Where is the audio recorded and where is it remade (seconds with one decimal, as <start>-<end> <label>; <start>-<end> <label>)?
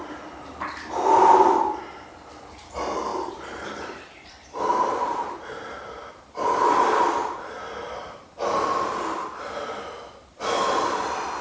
0.0-3.1 recorded; 3.1-6.1 remade; 6.1-11.4 recorded